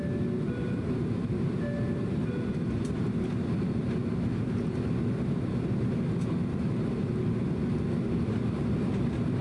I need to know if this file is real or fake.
real